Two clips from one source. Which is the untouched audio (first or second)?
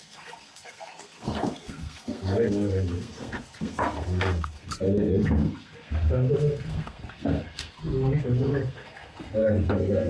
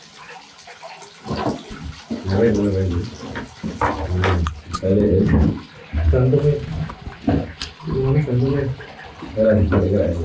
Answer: second